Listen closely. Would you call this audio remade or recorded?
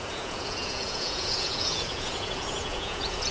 remade